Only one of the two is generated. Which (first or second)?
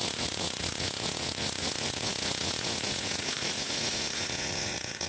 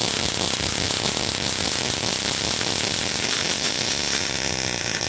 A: first